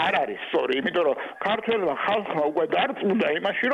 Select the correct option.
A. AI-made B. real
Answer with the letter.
B